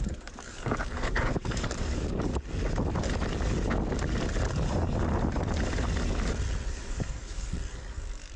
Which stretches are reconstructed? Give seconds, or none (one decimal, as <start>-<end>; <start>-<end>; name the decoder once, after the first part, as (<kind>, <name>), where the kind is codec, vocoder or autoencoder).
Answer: 0.0-2.3 (codec, DAC); 6.7-8.4